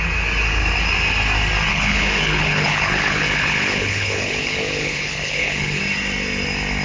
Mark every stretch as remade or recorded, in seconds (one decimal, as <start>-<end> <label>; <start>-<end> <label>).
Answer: 0.0-1.7 recorded; 1.7-5.8 remade; 5.8-6.8 recorded